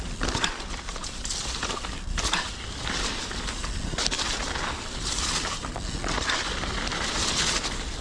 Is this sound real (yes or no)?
yes